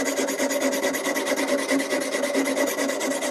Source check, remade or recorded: recorded